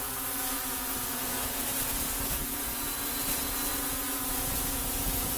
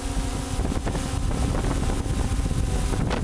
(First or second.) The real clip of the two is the second